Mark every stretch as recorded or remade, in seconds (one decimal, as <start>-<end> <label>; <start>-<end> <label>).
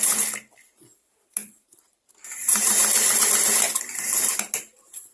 0.0-1.4 recorded; 1.4-2.7 remade; 2.7-5.1 recorded